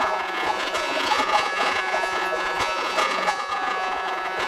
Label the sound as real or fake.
fake